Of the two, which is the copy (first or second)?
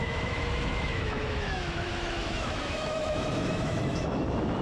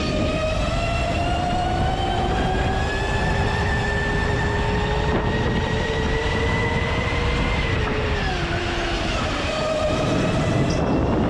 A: first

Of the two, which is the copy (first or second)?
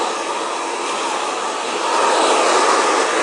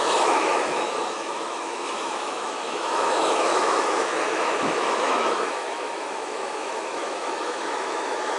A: second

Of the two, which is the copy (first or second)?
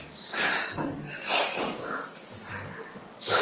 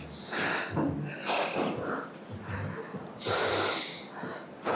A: first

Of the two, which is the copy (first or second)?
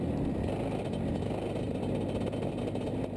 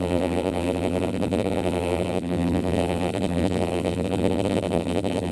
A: second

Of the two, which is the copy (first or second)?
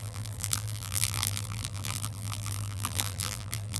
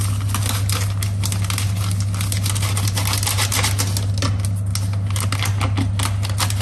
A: first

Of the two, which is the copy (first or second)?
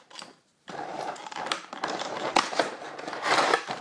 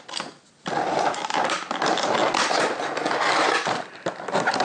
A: first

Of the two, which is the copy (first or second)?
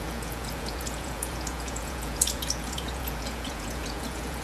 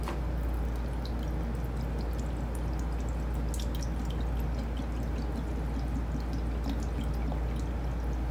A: first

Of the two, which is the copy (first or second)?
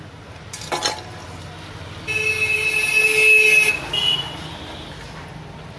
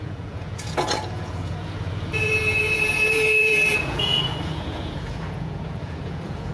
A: second